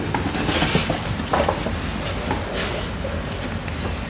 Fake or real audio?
real